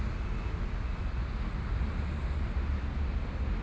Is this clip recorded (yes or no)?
yes